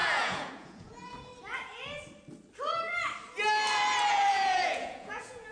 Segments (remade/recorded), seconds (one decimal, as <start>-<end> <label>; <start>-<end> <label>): 0.0-1.3 remade; 1.3-4.1 recorded; 4.1-5.5 remade